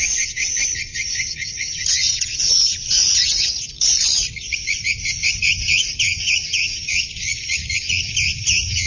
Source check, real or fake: fake